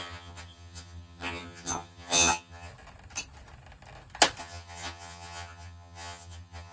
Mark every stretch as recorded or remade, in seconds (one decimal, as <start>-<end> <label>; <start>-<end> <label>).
0.0-2.7 remade; 2.7-4.4 recorded; 4.4-6.7 remade